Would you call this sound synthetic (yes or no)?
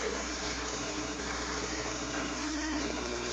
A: yes